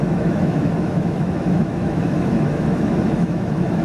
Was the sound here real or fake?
fake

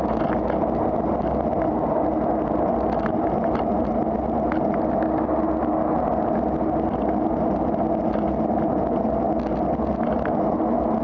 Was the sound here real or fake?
real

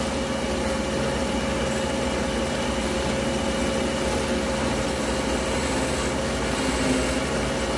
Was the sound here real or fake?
real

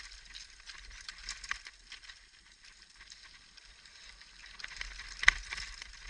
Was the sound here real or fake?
real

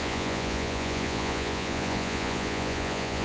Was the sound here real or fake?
fake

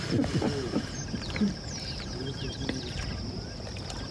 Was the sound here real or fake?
fake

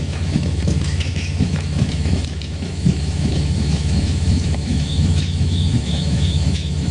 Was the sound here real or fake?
fake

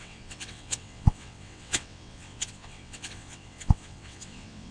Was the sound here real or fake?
fake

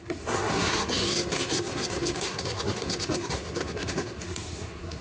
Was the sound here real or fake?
fake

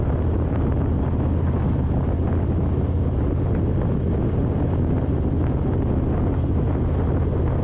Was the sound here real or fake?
real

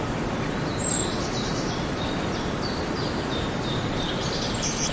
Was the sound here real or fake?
real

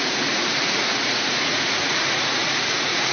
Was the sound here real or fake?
fake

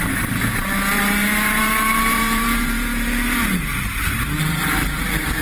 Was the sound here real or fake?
fake